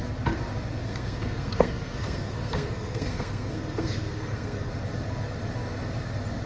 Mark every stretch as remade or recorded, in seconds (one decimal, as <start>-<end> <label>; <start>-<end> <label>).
0.0-0.8 recorded; 0.8-4.7 remade; 4.7-6.5 recorded